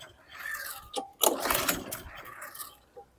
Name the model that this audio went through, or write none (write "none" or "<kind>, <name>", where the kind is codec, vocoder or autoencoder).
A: none